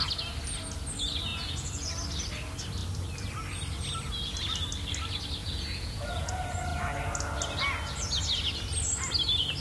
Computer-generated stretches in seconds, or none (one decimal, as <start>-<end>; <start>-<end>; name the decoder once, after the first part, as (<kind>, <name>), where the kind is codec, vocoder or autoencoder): 1.3-1.9 (vocoder, Vocos); 5.4-6.3